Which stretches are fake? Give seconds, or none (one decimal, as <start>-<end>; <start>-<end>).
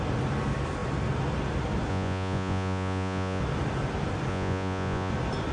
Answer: 1.9-3.4; 4.3-5.1